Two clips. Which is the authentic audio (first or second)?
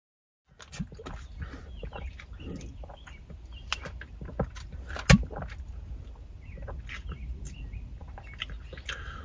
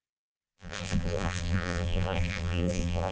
first